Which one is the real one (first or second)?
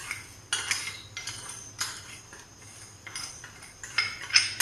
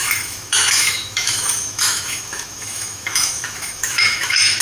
first